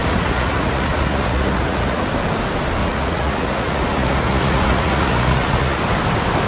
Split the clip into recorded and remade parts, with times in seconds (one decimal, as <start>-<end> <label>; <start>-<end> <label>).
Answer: 0.0-2.1 remade; 2.1-2.8 recorded; 2.8-5.8 remade; 5.8-6.5 recorded